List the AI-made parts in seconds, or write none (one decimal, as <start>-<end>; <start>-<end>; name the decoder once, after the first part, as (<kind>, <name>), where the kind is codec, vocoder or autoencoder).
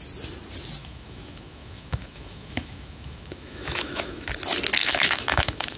0.8-4.3 (autoencoder, DAC-VAE); 4.8-5.8